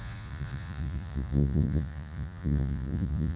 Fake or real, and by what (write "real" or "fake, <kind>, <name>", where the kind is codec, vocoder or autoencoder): fake, vocoder, Vocos